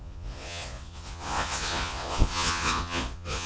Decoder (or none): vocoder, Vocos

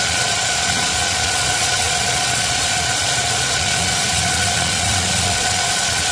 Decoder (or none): vocoder, Vocos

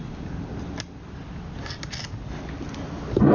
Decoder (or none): none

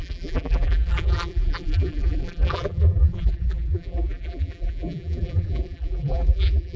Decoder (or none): vocoder, BigVGAN v2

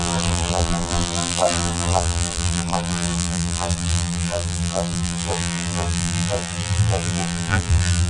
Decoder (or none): vocoder, BigVGAN v2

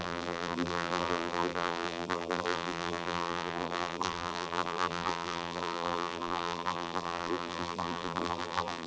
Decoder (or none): vocoder, BigVGAN v2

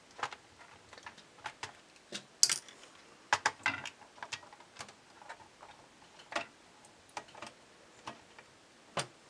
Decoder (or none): none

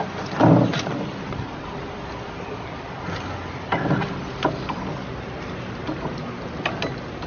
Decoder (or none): none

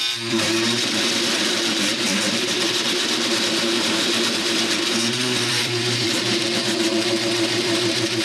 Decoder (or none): vocoder, BigVGAN v2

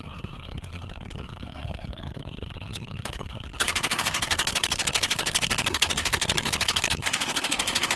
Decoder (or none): codec, SNAC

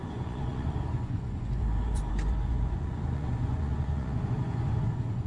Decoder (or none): vocoder, Vocos